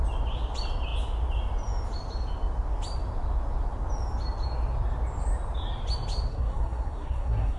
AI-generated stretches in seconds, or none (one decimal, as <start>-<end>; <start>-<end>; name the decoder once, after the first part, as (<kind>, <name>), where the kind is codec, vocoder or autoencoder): 6.3-7.6 (codec, SNAC)